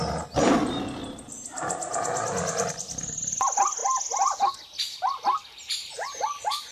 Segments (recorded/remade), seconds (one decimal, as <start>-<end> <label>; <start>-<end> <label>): 0.0-6.7 recorded